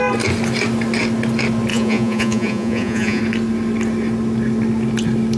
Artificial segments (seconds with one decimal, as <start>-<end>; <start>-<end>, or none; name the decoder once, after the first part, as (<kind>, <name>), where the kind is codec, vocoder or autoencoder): 1.7-3.2 (vocoder, Vocos)